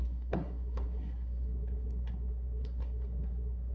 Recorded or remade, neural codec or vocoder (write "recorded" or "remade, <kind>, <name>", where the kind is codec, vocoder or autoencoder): remade, codec, SNAC